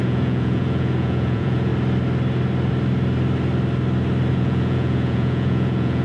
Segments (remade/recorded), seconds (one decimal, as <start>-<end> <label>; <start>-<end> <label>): 0.0-1.7 remade; 1.7-4.3 recorded; 4.3-6.0 remade